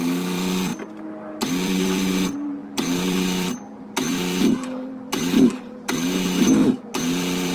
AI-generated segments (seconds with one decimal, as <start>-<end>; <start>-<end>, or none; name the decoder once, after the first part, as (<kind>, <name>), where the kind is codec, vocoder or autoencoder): 0.0-0.7 (vocoder, BigVGAN v2); 1.5-7.5